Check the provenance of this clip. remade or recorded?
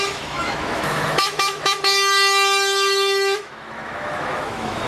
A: remade